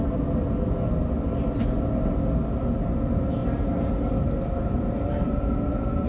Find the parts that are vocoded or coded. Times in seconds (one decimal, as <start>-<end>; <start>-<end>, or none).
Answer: none